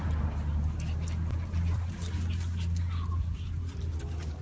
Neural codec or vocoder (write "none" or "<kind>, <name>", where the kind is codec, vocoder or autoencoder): none